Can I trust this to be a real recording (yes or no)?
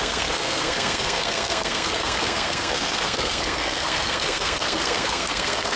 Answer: no